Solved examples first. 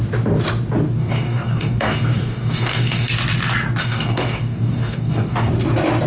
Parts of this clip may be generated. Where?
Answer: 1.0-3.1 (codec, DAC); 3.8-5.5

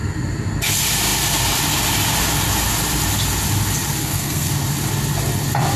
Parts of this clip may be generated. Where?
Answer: 4.0-4.5 (codec, SNAC)

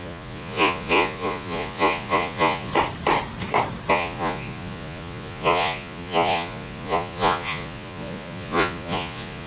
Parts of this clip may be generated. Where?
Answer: 0.0-2.7 (vocoder, Vocos); 3.9-9.5